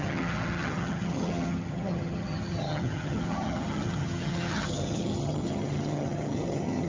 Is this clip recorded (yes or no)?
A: no